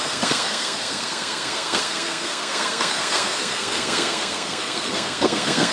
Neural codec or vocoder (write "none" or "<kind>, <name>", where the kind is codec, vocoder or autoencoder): codec, SNAC